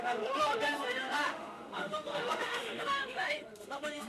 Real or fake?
fake